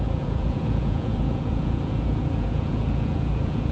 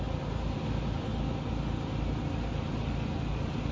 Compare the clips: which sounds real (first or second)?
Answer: second